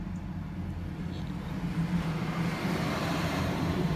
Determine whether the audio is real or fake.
fake